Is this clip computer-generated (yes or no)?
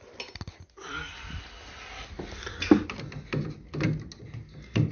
no